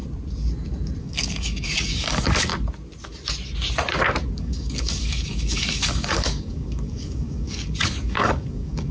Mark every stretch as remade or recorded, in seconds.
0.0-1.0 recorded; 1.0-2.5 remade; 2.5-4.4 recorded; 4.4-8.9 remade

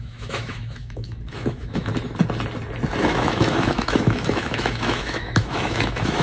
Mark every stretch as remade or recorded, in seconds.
0.0-1.9 remade; 1.9-3.0 recorded; 3.0-6.2 remade

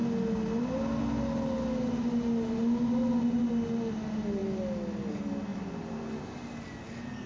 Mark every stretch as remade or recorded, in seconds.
0.0-7.3 recorded

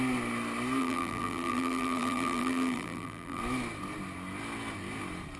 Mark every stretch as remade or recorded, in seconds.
0.0-0.8 recorded; 0.8-3.4 remade; 3.4-5.4 recorded

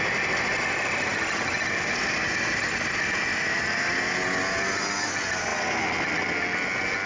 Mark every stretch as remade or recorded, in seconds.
0.0-7.1 recorded

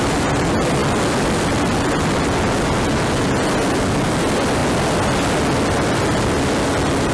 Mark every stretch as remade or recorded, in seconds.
0.0-7.1 recorded

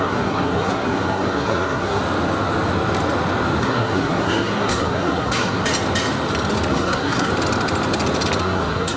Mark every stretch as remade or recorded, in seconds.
0.0-2.0 remade; 2.0-3.6 recorded; 3.6-5.6 remade; 5.6-6.7 recorded; 6.7-7.3 remade; 7.3-8.4 recorded; 8.4-9.0 remade